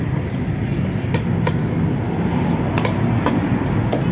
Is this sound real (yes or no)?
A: yes